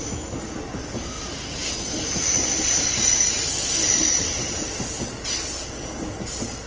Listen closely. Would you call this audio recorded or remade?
recorded